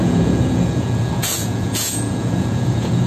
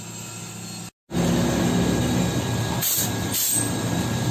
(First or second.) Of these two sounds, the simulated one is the first